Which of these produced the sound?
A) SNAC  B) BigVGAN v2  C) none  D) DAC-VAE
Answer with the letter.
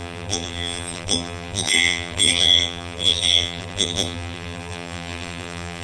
B